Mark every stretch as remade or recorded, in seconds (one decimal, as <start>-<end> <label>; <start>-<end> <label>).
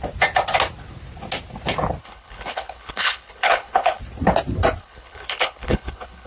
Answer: 0.0-2.0 recorded; 2.0-4.0 remade; 4.0-4.8 recorded; 4.8-6.3 remade